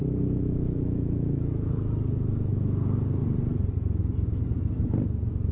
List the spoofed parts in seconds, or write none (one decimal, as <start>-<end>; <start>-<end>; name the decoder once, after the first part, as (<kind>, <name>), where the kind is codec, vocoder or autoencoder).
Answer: 0.0-1.8 (autoencoder, DAC-VAE)

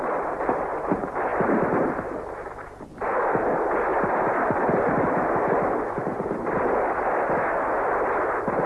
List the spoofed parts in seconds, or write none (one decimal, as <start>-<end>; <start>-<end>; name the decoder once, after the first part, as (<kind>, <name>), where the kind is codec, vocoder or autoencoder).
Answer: 1.3-1.9 (vocoder, BigVGAN v2); 3.9-7.5